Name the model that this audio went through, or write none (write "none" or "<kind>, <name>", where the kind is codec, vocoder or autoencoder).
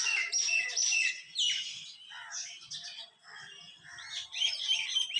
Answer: none